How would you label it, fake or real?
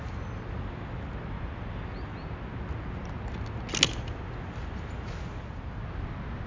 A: real